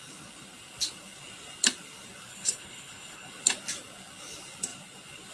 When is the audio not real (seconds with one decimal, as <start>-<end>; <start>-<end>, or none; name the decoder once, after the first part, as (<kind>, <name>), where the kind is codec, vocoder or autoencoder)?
2.3-3.3 (codec, HILCodec)